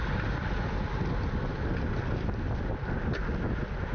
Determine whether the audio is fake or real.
real